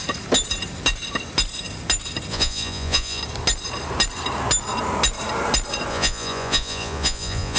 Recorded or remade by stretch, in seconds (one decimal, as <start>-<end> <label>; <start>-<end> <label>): 0.0-2.3 recorded; 2.3-3.2 remade; 3.2-5.9 recorded; 5.9-7.6 remade